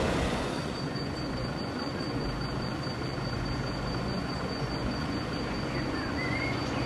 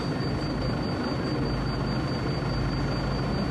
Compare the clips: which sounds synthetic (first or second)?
first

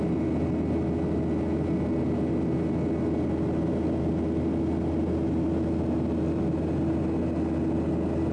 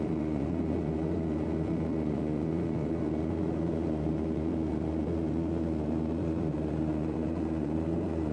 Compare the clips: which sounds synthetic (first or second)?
second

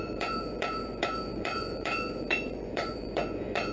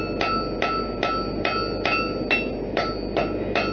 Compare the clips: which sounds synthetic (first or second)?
first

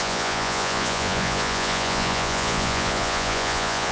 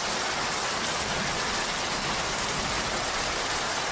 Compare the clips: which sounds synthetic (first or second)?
first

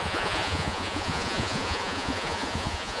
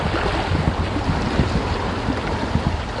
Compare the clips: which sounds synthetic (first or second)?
first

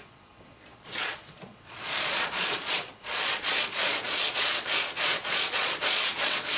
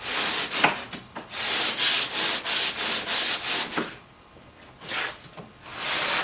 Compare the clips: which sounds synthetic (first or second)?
first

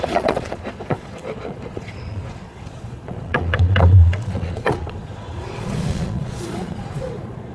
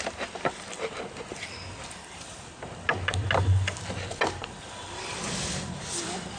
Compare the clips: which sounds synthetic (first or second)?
first